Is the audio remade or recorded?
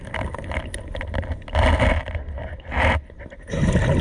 recorded